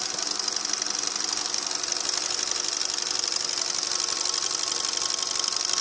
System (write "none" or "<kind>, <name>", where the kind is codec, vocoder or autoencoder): none